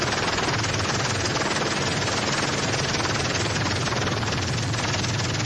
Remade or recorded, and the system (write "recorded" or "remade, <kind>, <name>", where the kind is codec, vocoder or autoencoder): recorded